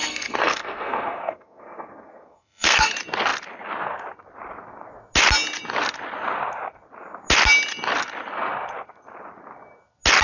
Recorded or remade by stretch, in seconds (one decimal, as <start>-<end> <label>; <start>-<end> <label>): 0.0-2.9 remade; 2.9-10.2 recorded